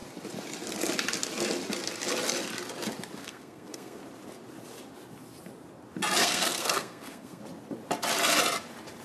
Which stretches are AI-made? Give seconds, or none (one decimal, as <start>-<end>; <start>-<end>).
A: 3.2-4.0; 6.2-7.4